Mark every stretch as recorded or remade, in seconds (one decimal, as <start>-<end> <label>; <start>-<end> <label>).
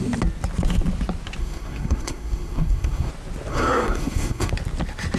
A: 0.0-1.4 recorded; 1.4-3.1 remade; 3.1-3.5 recorded; 3.5-4.5 remade; 4.5-5.2 recorded